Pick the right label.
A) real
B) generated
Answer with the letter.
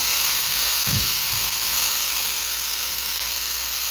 B